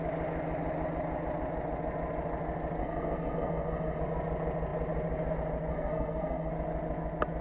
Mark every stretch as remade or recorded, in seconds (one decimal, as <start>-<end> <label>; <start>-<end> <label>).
0.0-2.8 recorded; 2.8-4.0 remade; 4.0-5.7 recorded; 5.7-6.5 remade; 6.5-7.4 recorded